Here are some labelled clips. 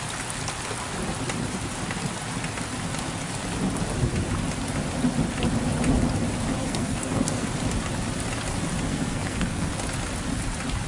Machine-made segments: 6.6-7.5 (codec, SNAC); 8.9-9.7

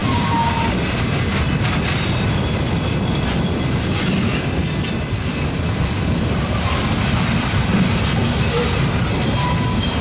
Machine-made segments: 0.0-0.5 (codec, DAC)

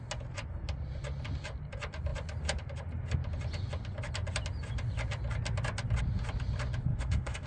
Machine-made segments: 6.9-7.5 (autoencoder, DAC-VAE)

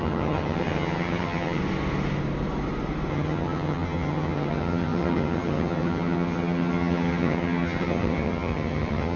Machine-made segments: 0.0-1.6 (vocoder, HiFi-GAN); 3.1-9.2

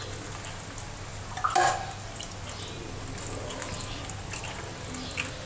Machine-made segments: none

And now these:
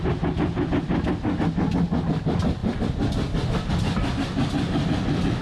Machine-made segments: none

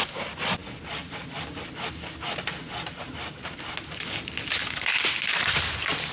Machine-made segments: none